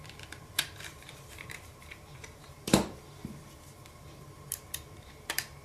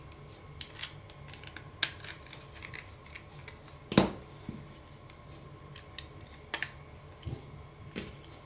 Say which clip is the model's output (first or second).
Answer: first